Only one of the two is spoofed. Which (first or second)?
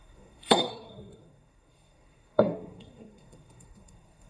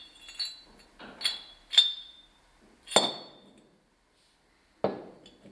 first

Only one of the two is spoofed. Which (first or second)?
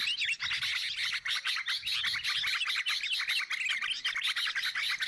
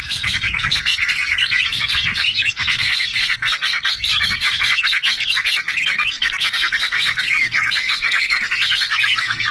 second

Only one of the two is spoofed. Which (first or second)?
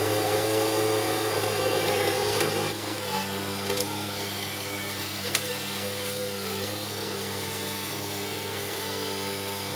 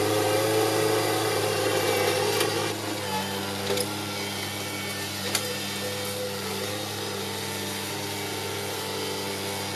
first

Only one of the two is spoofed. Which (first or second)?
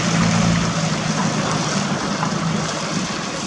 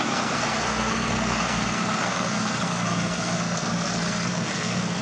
second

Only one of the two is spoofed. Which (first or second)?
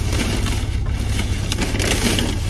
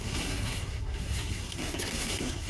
second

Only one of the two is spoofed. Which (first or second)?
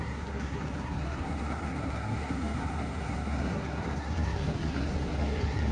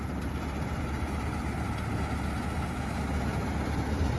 first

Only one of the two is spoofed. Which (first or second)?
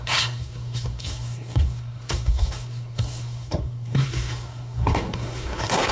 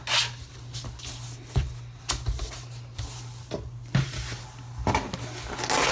first